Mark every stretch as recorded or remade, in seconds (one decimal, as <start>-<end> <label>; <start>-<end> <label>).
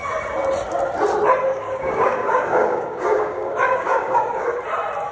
0.0-1.5 recorded; 1.5-4.6 remade; 4.6-5.1 recorded